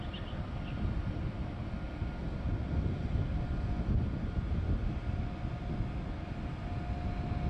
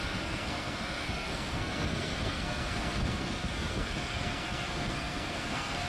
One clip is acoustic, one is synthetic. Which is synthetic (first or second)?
second